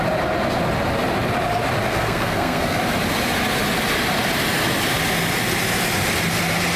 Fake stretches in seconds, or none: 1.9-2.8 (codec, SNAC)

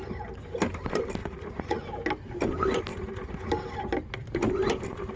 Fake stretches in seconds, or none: 1.2-1.8 (vocoder, Vocos)

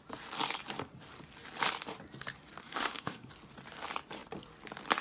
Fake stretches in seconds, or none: 2.6-3.3 (codec, SNAC)